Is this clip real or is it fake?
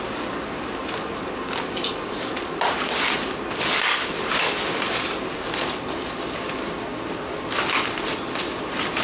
real